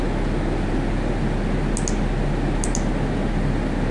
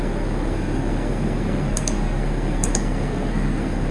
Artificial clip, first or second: second